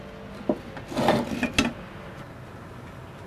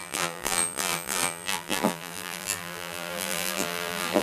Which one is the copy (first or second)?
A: second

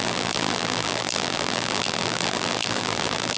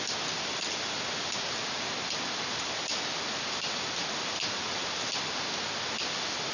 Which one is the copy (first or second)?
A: first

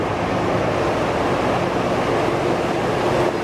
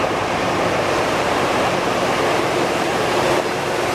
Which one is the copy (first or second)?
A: second